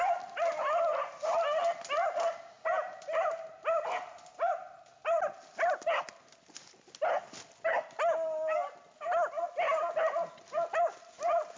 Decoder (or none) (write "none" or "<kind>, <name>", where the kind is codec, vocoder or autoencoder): none